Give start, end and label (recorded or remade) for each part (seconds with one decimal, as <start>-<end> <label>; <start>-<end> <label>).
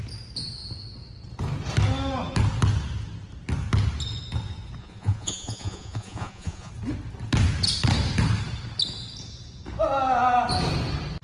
0.0-4.8 recorded; 4.8-6.7 remade; 6.7-11.2 recorded